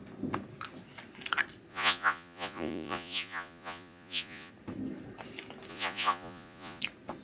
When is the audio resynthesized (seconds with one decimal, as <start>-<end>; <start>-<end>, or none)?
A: 1.7-4.5; 5.7-6.8